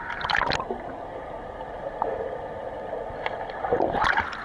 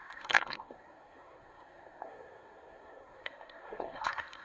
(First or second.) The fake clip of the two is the second